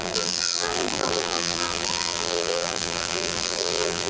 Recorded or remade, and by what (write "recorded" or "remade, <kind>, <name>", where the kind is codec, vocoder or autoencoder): remade, vocoder, BigVGAN v2